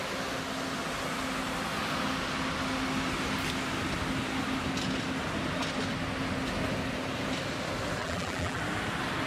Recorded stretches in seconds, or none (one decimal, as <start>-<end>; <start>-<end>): 0.0-8.0; 8.6-9.3